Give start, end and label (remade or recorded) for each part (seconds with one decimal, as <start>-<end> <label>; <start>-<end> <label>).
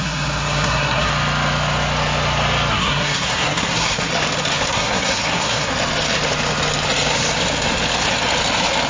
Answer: 0.0-1.1 remade; 1.1-2.7 recorded; 2.7-4.1 remade; 4.1-4.7 recorded; 4.7-5.7 remade; 5.7-8.9 recorded